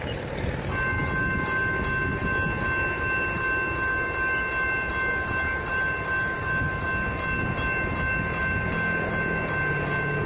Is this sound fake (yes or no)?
no